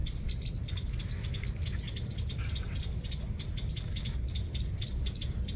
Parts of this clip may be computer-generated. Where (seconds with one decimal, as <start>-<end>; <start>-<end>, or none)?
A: none